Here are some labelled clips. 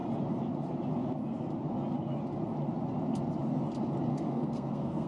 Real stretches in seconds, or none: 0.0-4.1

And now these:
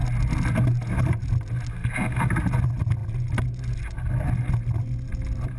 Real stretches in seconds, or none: 0.0-5.6

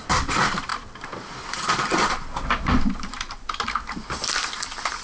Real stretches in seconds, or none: 0.0-5.0

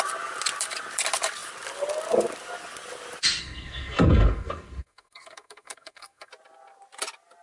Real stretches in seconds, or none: 0.0-3.4; 6.3-7.4

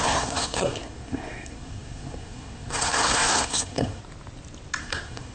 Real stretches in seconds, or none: 4.0-4.8